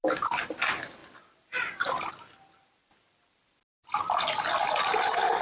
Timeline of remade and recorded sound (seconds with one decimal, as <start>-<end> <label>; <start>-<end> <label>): 0.0-5.4 recorded